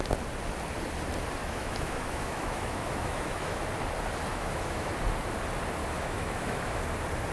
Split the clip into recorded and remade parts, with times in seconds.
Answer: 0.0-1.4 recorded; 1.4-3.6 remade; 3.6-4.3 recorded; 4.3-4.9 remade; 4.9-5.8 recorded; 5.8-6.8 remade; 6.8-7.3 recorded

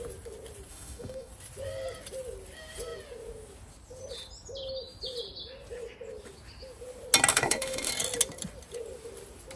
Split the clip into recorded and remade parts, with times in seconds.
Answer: 0.0-0.7 recorded; 0.7-1.3 remade; 1.3-7.3 recorded; 7.3-7.9 remade; 7.9-9.6 recorded